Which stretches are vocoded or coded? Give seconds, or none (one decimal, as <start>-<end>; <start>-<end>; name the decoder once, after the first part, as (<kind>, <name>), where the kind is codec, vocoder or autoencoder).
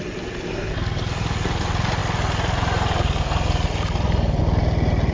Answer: none